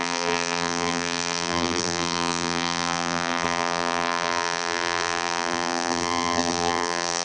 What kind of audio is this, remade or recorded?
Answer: remade